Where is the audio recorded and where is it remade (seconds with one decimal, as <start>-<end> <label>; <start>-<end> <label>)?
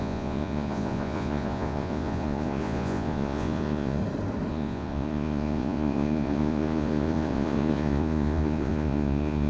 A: 0.0-4.0 remade; 4.0-4.5 recorded; 4.5-9.5 remade